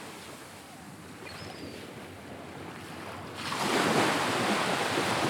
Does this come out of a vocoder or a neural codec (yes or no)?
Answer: no